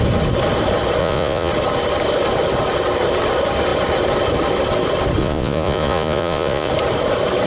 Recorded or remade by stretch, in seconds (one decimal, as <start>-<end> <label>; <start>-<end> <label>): 0.0-1.0 recorded; 1.0-1.5 remade; 1.5-5.2 recorded; 5.2-6.7 remade; 6.7-7.5 recorded